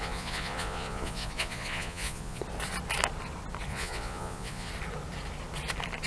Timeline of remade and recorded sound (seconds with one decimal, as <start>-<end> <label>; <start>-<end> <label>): 0.0-2.4 remade; 2.4-3.7 recorded; 3.7-4.7 remade; 4.7-6.1 recorded